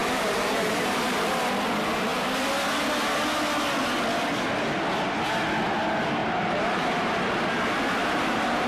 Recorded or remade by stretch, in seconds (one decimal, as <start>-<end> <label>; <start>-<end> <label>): 0.0-1.1 remade; 1.1-6.2 recorded; 6.2-7.4 remade; 7.4-8.0 recorded; 8.0-8.7 remade